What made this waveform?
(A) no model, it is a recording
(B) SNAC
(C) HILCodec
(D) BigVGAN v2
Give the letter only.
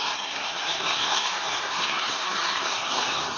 B